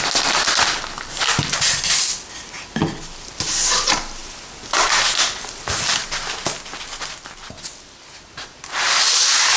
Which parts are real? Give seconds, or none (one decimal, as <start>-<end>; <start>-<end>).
0.0-9.6